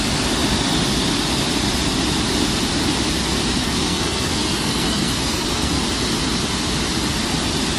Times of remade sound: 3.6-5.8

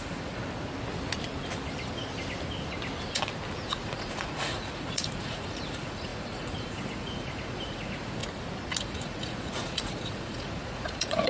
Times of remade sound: 0.0-0.4; 3.7-8.2; 8.8-11.3

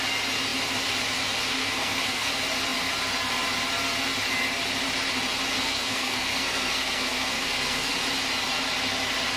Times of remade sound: 1.6-2.3; 5.5-7.9

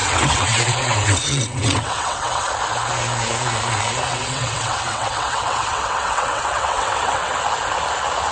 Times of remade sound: 0.0-2.5; 4.1-7.4

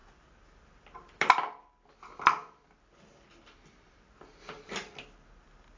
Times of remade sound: none